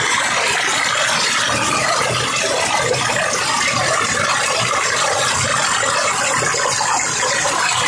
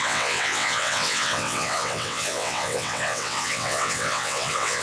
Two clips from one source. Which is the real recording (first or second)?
first